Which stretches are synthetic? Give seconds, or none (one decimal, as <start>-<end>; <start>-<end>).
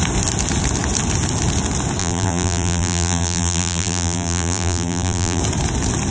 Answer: 2.0-5.4